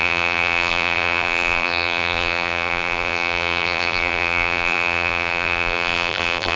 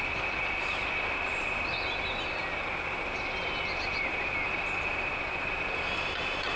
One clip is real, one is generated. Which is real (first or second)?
second